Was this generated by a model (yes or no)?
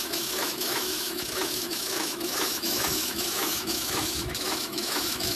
yes